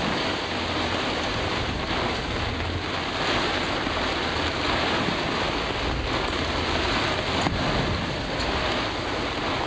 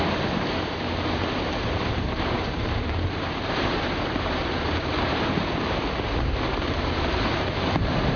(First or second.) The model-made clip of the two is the second